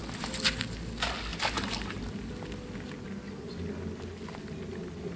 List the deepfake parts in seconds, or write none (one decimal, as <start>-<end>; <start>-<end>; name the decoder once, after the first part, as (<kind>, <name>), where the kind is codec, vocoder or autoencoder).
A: none